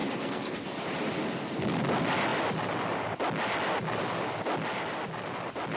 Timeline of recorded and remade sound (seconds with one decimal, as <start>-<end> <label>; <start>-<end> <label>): 0.0-0.8 remade; 0.8-5.8 recorded